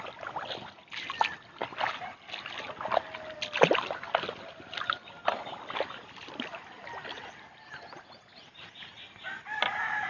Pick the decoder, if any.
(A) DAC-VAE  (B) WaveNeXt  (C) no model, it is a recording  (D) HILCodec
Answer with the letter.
C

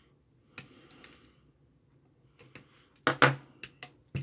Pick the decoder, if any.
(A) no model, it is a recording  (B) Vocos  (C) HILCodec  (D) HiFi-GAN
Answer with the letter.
A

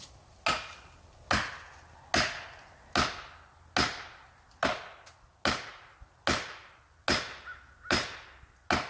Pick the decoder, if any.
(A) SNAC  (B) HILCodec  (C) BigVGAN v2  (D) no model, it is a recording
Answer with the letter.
D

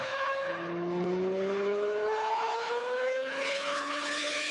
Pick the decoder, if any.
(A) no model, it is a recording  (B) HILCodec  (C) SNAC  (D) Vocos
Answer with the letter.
B